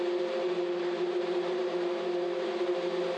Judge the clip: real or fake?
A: real